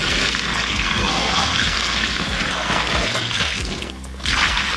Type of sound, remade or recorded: remade